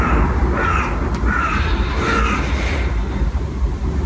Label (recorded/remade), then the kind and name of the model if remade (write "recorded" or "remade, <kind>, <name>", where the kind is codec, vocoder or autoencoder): recorded